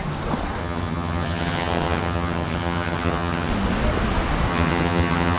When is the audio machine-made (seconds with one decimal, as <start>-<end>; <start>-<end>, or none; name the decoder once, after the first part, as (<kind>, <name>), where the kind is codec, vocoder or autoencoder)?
0.6-3.5 (vocoder, HiFi-GAN); 4.5-5.4

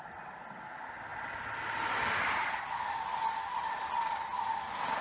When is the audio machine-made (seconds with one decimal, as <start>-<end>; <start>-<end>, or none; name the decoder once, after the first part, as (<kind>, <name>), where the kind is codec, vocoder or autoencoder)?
none

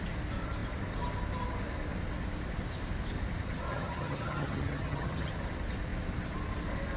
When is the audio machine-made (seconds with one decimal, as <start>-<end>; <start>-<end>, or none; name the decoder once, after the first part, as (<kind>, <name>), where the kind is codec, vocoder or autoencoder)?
3.7-5.3 (vocoder, HiFi-GAN)

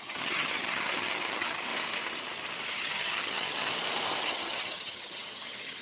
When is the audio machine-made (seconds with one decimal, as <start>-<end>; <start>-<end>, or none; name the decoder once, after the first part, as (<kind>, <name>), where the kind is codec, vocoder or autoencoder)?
0.0-1.7 (vocoder, HiFi-GAN); 2.7-3.7; 4.2-5.8

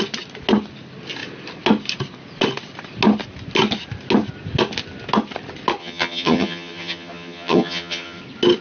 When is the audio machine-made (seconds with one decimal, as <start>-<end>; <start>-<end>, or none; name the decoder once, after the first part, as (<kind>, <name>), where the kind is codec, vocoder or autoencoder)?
5.8-8.2 (vocoder, HiFi-GAN)

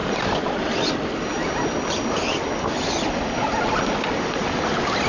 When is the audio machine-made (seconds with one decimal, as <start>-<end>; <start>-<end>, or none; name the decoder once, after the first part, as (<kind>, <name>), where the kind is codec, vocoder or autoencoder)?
none

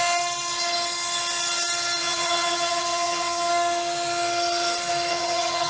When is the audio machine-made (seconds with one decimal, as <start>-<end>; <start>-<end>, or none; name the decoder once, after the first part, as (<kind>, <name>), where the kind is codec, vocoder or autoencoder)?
2.0-3.5 (vocoder, HiFi-GAN); 5.1-5.7